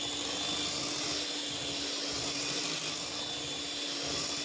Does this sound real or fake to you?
real